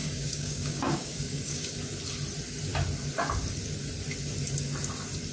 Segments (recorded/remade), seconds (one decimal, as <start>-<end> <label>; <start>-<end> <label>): 0.0-1.7 remade; 1.7-5.3 recorded